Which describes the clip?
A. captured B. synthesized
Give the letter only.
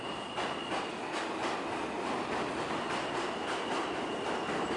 A